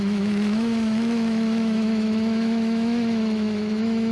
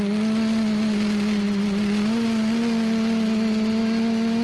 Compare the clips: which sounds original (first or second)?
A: second